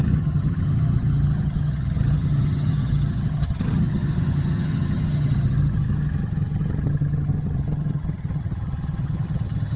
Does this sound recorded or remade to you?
remade